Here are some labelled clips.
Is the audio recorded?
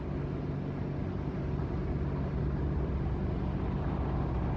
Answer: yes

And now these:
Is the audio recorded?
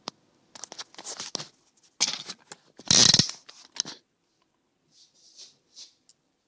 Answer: yes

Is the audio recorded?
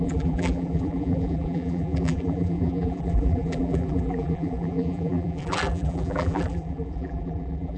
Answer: no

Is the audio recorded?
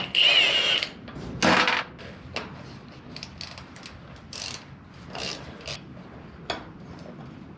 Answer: yes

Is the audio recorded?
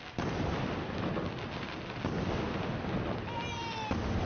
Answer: yes